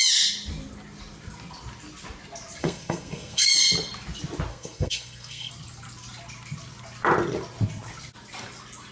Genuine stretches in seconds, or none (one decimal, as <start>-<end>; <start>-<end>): 0.0-2.6; 3.5-4.5; 5.5-8.9